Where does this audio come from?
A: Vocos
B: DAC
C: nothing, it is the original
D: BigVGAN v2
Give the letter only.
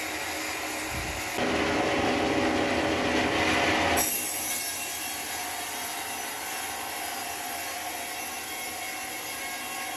C